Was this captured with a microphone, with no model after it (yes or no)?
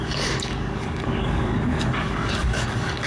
no